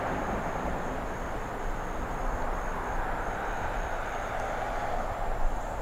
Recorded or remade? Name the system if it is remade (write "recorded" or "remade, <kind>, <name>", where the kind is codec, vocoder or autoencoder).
recorded